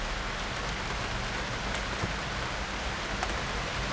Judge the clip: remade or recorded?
recorded